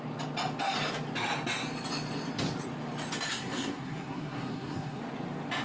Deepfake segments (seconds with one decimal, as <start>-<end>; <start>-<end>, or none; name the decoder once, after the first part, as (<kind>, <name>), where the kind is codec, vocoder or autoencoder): 3.3-5.0 (codec, SNAC)